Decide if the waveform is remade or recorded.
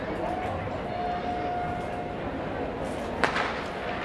recorded